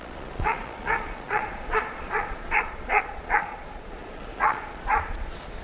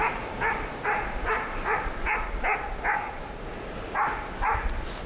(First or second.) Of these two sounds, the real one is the second